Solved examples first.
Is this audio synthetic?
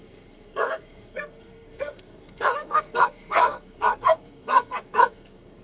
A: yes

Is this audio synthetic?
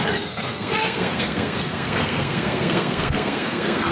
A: yes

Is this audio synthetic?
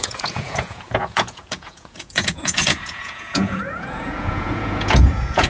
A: yes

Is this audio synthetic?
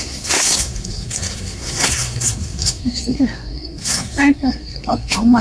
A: yes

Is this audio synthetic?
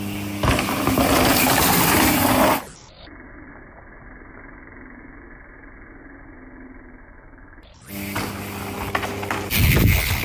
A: no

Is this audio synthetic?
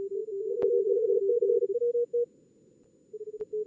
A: no